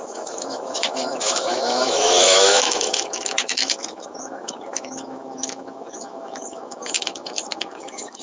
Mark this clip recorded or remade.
remade